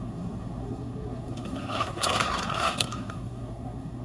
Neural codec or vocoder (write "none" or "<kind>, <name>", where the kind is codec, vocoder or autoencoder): codec, SNAC